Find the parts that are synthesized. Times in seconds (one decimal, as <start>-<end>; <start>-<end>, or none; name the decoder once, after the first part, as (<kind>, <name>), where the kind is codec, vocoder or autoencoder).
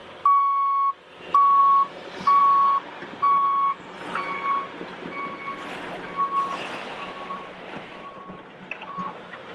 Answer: 1.6-2.4 (vocoder, BigVGAN v2); 7.3-9.5